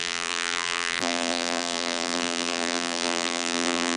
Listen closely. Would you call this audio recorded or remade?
remade